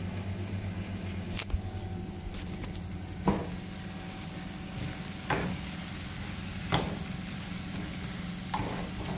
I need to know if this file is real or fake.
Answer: real